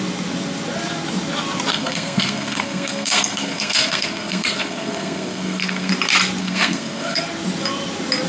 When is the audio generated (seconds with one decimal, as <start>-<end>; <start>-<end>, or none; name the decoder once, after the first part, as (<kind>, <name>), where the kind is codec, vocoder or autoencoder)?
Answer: 1.7-5.9 (codec, SNAC); 6.4-7.2